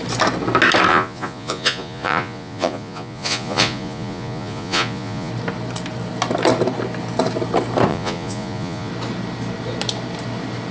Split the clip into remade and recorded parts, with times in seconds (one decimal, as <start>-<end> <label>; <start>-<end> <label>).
0.0-0.9 recorded; 0.9-5.3 remade; 5.3-7.9 recorded; 7.9-8.9 remade; 8.9-10.7 recorded